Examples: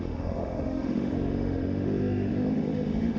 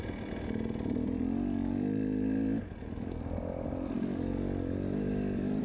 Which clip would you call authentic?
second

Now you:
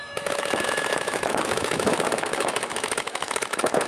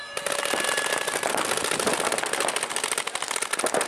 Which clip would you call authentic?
second